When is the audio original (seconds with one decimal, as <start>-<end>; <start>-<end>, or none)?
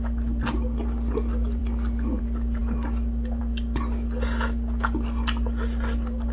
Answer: 0.0-6.3